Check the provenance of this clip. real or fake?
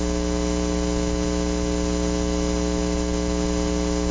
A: real